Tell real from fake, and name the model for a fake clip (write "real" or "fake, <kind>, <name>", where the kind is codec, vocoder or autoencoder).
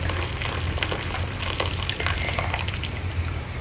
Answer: real